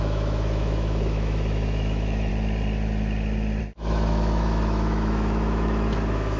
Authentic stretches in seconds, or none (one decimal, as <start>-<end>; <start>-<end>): 2.3-3.6

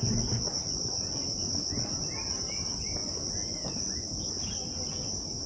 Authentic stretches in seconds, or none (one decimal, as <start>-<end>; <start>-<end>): 0.0-5.5